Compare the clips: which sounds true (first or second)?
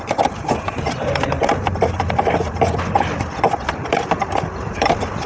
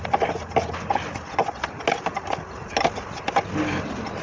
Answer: second